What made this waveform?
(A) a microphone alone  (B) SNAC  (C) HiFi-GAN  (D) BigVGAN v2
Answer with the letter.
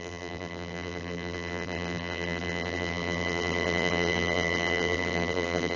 D